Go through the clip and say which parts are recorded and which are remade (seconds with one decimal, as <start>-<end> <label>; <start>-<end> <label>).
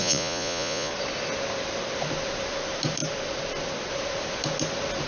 0.0-0.9 remade; 0.9-5.1 recorded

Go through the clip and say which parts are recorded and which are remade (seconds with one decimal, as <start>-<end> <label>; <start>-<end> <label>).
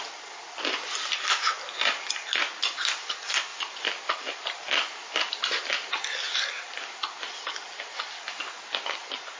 0.0-9.4 recorded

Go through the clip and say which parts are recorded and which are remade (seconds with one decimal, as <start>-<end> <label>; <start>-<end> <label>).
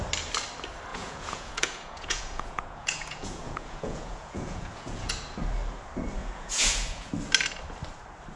0.0-0.9 recorded; 0.9-5.1 remade; 5.1-6.2 recorded; 6.2-7.1 remade; 7.1-8.4 recorded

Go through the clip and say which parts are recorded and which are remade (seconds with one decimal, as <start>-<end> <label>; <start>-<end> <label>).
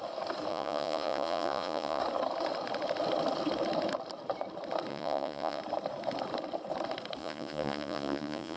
0.0-0.5 recorded; 0.5-2.0 remade; 2.0-4.9 recorded; 4.9-5.6 remade; 5.6-7.2 recorded; 7.2-8.6 remade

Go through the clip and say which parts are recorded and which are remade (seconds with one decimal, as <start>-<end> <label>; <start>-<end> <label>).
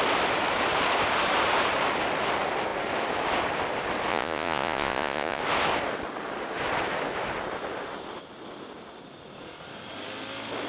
0.0-4.1 recorded; 4.1-5.4 remade; 5.4-10.7 recorded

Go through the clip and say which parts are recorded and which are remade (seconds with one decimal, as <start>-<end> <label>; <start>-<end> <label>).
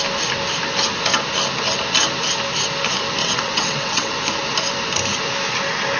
0.0-3.2 recorded; 3.2-4.1 remade; 4.1-6.0 recorded